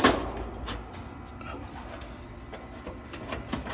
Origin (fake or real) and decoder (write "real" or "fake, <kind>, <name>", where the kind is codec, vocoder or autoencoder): real